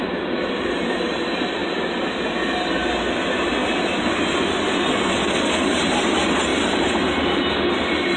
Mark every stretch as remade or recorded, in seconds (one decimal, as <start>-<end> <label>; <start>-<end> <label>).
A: 0.0-4.9 recorded; 4.9-5.5 remade; 5.5-8.2 recorded